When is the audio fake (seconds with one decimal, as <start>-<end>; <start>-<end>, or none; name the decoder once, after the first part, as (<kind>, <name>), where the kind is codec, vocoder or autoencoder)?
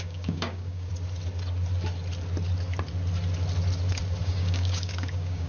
0.0-0.9 (codec, DAC); 4.2-5.5